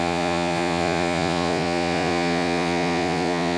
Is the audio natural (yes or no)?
no